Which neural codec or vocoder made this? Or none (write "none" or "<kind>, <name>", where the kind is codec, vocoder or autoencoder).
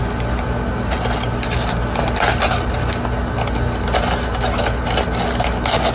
none